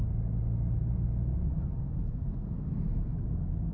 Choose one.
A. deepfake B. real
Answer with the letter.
B